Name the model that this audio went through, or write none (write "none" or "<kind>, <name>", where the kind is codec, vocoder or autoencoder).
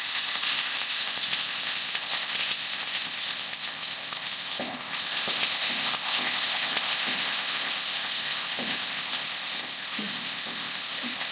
codec, ZipCodec